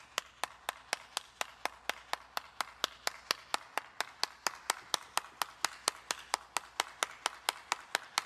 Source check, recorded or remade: recorded